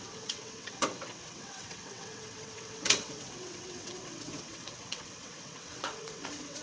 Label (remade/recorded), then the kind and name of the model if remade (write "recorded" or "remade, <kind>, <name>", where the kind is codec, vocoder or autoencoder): remade, vocoder, WaveNeXt